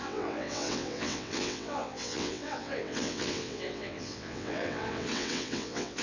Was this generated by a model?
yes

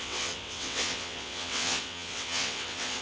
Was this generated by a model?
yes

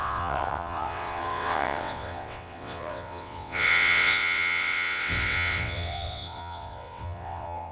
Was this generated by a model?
yes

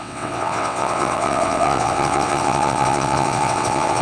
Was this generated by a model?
yes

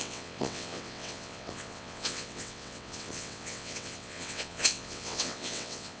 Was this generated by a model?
yes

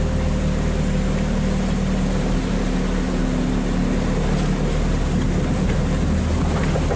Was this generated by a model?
no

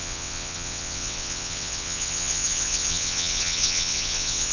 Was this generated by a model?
yes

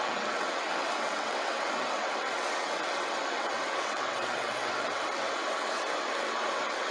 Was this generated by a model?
yes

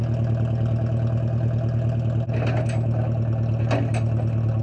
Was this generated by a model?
no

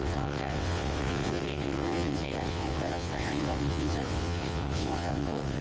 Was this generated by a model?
yes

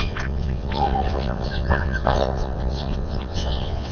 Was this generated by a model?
yes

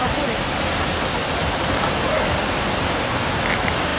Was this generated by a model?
no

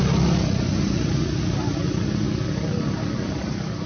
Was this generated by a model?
no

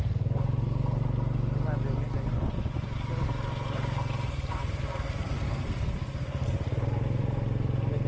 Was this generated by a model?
no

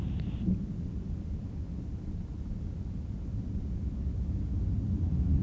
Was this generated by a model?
no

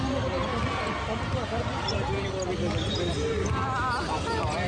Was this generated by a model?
no